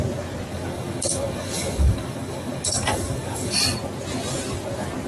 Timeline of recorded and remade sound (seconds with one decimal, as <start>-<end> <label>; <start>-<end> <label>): 0.0-0.5 recorded; 0.5-3.6 remade; 3.6-5.1 recorded